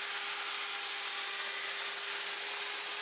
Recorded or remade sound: recorded